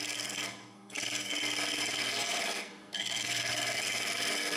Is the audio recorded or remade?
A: remade